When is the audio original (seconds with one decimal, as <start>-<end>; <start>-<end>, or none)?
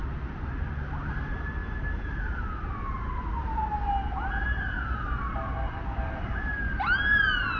0.0-7.6